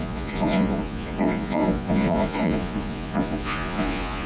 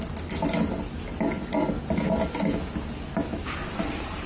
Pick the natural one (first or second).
second